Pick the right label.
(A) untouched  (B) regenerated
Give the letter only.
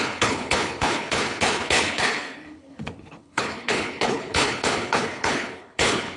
B